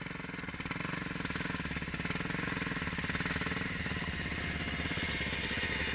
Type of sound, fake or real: real